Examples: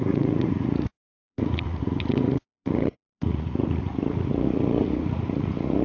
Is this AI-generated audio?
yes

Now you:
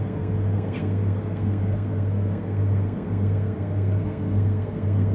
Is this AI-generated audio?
yes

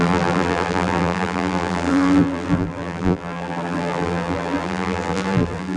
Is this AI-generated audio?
yes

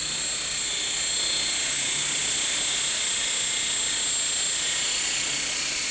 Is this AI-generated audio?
no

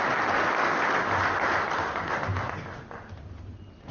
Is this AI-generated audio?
no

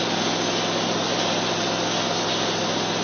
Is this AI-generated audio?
no